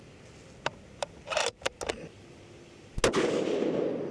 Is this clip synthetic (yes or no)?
no